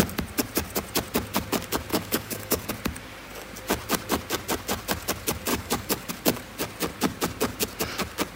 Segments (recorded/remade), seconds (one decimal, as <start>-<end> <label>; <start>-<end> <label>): 0.0-1.9 recorded; 1.9-2.7 remade; 2.7-5.5 recorded; 5.5-6.1 remade; 6.1-8.4 recorded